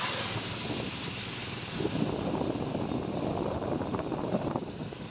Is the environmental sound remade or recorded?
recorded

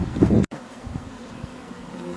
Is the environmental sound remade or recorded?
remade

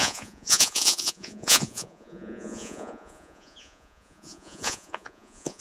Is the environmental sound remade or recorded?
remade